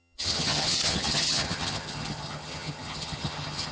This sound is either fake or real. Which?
fake